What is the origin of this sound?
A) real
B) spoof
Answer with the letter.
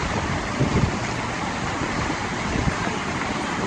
A